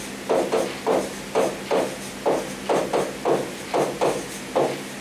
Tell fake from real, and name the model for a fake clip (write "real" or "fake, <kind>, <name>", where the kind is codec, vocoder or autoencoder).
real